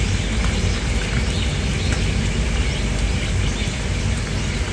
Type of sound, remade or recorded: recorded